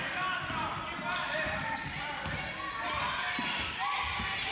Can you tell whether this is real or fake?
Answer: real